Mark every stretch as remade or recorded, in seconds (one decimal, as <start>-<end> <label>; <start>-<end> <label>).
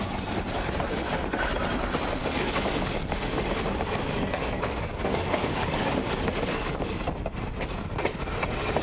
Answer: 0.0-2.2 recorded; 2.2-7.0 remade; 7.0-8.8 recorded